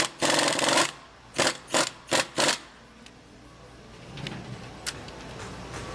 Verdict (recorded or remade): recorded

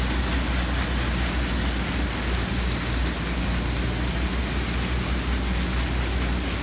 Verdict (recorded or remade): recorded